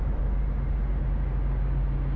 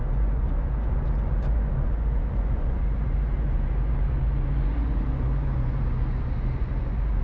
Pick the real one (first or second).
first